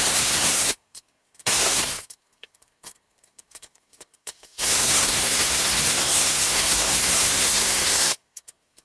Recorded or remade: remade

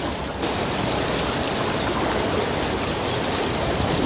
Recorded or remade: recorded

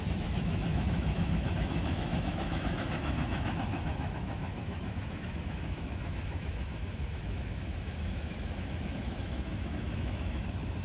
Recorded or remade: remade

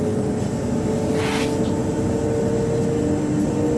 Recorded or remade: recorded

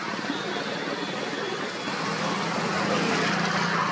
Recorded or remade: recorded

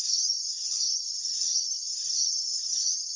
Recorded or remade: remade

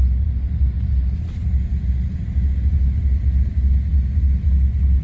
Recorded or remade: recorded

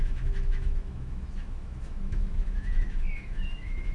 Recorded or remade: remade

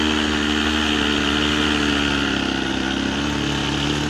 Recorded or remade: recorded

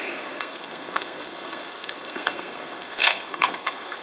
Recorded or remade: remade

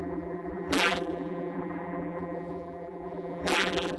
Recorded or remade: remade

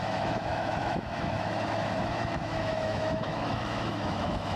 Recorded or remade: remade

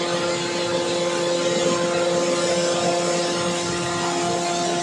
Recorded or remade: recorded